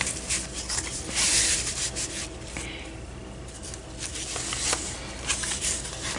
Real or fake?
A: real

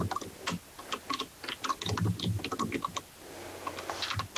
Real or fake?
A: real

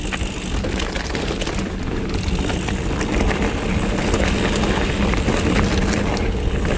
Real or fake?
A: real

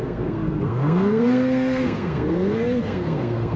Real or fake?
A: fake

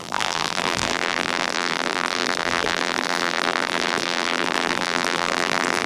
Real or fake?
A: fake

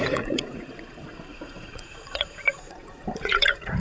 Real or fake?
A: fake